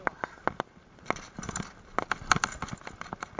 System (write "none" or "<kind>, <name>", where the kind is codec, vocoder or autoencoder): none